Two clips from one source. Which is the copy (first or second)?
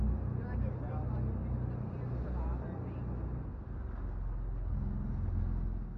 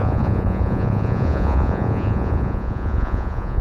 second